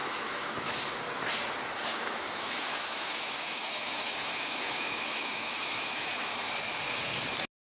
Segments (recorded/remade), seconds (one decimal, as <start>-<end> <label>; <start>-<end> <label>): 0.0-0.8 remade; 0.8-1.9 recorded; 1.9-6.5 remade; 6.5-7.6 recorded